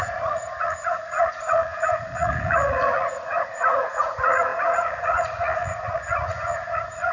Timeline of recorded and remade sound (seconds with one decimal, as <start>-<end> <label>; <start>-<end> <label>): 0.0-7.1 remade